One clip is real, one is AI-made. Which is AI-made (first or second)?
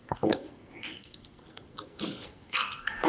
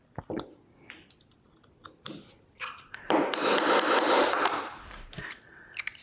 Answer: first